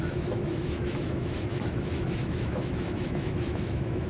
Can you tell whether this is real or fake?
fake